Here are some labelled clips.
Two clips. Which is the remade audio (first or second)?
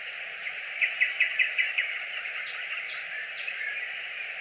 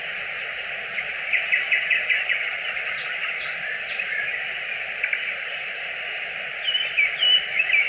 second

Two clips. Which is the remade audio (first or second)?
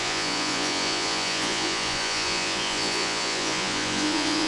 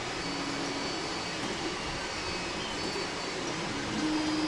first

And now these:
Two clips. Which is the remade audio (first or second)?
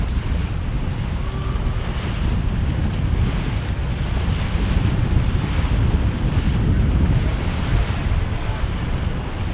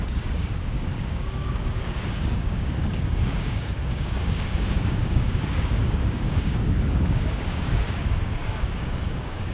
second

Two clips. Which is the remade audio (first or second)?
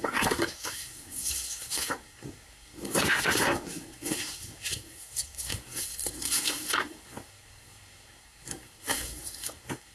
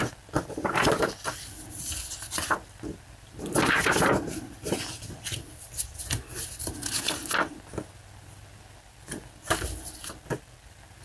first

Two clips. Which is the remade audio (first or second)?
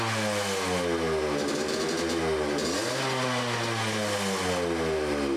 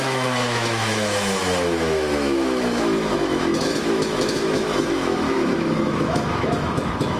second